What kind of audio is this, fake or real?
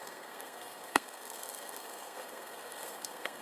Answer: fake